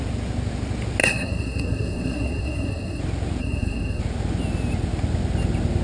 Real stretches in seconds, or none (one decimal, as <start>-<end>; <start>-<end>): 0.0-1.0; 3.0-3.4; 4.0-5.8